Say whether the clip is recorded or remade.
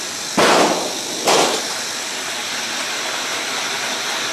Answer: recorded